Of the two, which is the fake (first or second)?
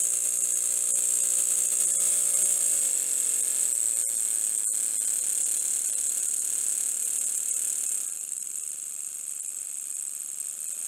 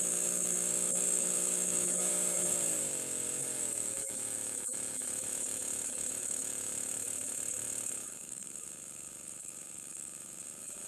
second